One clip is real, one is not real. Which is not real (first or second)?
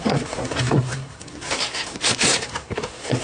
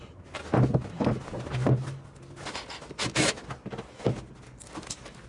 first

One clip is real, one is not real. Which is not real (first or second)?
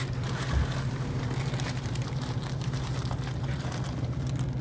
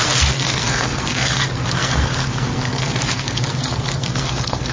second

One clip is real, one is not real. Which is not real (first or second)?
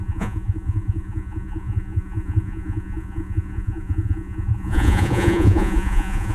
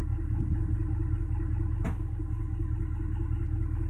first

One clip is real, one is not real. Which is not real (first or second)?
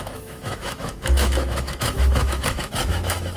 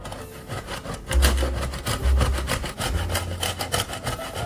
first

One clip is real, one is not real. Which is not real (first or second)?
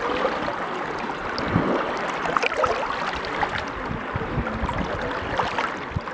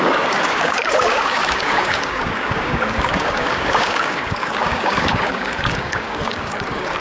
second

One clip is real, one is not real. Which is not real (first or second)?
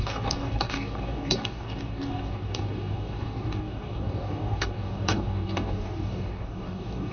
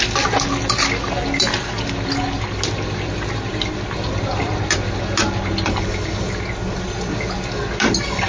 first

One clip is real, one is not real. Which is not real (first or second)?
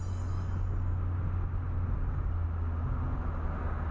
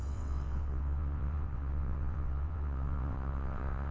second